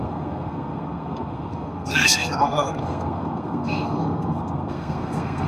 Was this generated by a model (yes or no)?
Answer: yes